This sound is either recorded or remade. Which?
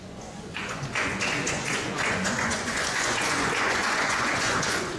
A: remade